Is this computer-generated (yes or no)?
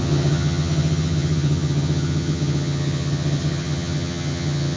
yes